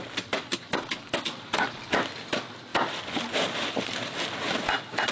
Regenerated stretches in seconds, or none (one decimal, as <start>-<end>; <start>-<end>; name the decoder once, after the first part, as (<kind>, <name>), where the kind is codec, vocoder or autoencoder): none